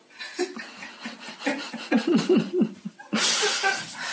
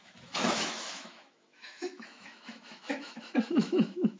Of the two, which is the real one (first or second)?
first